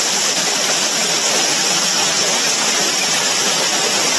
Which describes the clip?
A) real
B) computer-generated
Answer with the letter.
A